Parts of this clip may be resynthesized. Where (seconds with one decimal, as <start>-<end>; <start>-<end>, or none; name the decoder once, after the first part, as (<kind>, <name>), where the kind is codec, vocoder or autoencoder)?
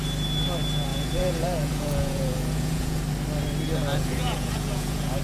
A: 0.9-3.0 (vocoder, Vocos); 3.9-5.2